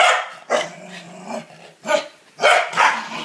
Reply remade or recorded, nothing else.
recorded